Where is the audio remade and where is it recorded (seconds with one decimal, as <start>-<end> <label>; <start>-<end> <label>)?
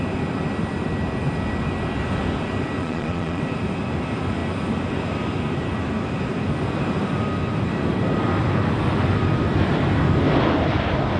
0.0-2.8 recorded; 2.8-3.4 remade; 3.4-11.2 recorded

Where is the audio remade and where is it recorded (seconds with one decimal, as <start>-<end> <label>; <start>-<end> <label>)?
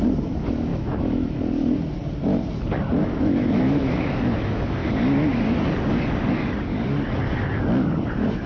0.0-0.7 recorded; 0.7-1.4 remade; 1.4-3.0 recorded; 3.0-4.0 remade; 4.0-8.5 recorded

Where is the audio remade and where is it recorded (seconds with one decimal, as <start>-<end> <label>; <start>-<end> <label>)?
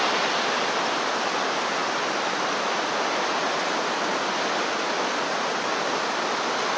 0.0-6.8 recorded